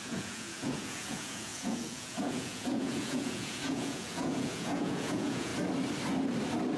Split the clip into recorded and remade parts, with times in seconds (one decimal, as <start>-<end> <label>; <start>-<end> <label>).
0.0-5.5 remade; 5.5-6.8 recorded